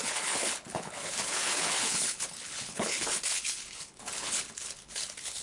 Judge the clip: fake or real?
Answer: fake